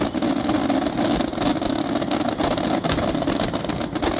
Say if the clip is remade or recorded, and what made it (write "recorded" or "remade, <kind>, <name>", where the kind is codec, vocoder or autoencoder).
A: recorded